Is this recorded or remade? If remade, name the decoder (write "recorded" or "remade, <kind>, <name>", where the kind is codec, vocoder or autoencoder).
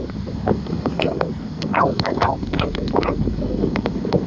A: remade, codec, SNAC